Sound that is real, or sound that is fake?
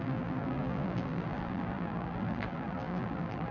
fake